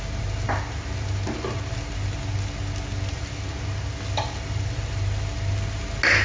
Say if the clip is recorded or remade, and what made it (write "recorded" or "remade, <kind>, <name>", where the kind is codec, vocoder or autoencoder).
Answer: recorded